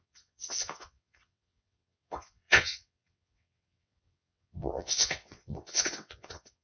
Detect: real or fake fake